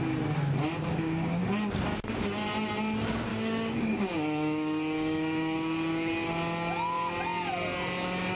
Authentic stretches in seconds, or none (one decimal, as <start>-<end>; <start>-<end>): 0.0-0.9; 1.4-3.3; 6.3-8.3